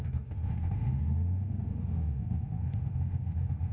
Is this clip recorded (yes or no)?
no